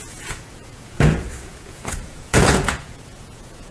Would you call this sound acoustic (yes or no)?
no